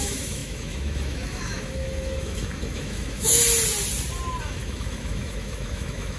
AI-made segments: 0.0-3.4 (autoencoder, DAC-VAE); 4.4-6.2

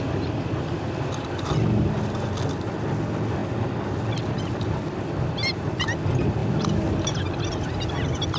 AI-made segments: none

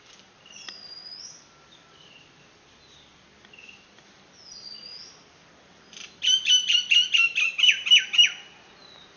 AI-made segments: none

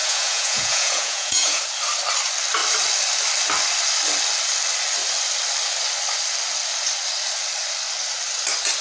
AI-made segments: 0.0-1.6 (vocoder, Vocos)

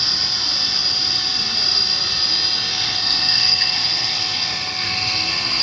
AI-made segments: 2.7-5.6 (codec, SNAC)

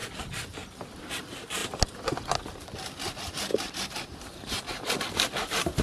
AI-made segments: 3.5-5.0 (vocoder, BigVGAN v2)

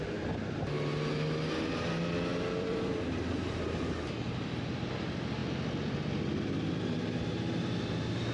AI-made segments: 2.3-3.6 (vocoder, BigVGAN v2); 5.4-6.7